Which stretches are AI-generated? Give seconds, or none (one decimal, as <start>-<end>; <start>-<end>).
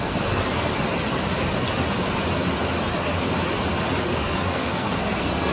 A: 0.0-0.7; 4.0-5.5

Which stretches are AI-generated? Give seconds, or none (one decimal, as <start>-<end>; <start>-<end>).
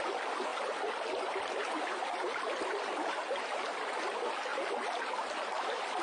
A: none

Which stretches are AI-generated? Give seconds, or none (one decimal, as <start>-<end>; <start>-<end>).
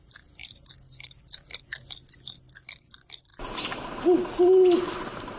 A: none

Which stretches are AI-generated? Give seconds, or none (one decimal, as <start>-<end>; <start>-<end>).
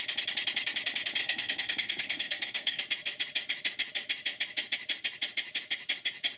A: 1.2-2.8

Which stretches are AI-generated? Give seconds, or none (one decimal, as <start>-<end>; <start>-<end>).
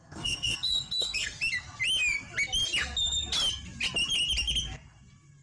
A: 0.0-1.4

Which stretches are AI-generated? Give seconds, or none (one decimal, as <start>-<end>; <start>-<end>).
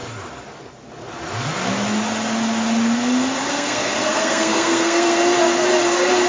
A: 3.5-5.2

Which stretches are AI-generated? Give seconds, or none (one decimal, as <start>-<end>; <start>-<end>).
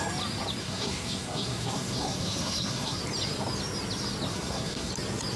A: 0.6-3.0; 4.3-4.9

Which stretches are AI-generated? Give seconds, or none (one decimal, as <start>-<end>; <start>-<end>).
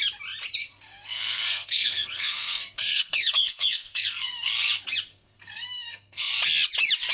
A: 0.6-4.5; 5.1-6.3